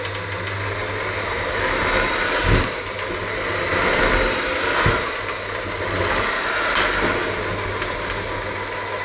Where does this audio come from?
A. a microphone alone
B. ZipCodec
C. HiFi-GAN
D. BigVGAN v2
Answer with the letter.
A